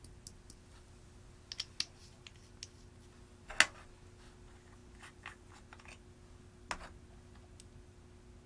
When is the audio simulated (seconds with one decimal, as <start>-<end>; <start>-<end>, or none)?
none